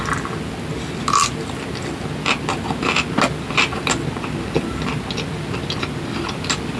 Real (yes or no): yes